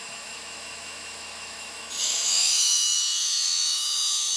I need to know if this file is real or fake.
fake